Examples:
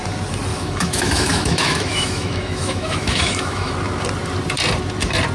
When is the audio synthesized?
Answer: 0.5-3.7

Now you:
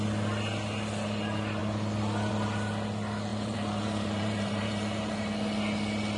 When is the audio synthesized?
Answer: 3.3-5.1

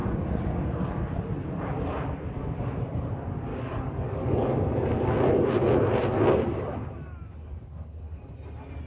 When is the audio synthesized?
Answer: 3.5-5.1; 7.2-8.2

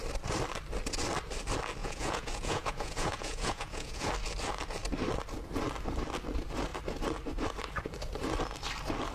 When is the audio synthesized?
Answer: 1.8-4.1

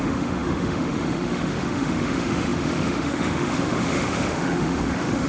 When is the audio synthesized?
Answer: 0.0-5.3